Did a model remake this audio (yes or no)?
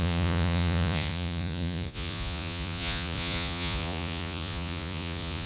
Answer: yes